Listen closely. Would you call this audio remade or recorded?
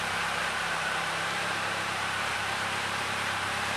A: remade